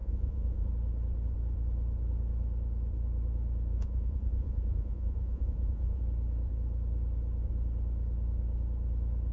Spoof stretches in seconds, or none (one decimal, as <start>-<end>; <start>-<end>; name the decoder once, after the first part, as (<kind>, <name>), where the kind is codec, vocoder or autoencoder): 0.0-0.7 (vocoder, Vocos); 3.7-6.0

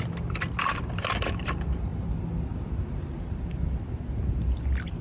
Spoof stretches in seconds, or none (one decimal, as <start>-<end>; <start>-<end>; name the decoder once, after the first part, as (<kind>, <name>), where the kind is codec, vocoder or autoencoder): none

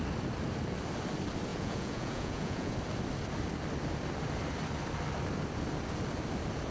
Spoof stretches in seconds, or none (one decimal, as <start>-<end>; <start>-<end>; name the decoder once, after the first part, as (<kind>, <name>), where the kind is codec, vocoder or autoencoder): 1.5-2.7 (vocoder, Vocos)

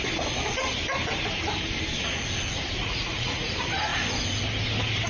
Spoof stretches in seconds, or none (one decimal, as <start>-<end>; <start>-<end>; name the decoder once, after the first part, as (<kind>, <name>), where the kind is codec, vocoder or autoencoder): 2.8-3.5 (vocoder, Vocos)

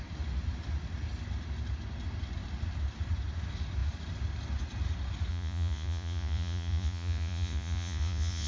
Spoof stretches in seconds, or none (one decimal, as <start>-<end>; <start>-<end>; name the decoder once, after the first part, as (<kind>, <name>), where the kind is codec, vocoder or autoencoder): 5.3-8.5 (vocoder, Vocos)

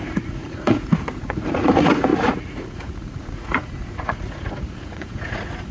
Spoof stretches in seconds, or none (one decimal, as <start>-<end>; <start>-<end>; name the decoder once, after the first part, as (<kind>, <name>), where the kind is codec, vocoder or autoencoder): 0.0-5.7 (vocoder, Vocos)

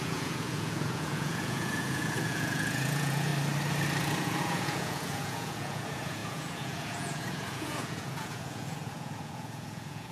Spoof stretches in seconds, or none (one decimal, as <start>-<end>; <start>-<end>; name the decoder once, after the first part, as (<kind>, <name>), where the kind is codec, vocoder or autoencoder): 0.0-3.3 (vocoder, Vocos); 4.0-10.1